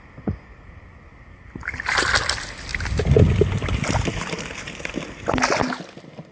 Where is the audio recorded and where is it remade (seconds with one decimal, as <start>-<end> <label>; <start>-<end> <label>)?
0.0-6.3 recorded